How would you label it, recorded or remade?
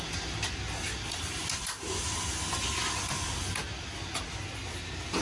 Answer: recorded